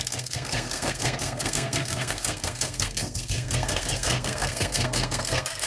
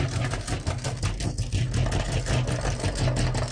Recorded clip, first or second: second